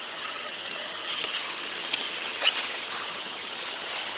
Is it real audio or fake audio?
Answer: fake